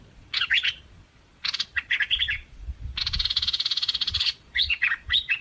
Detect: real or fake fake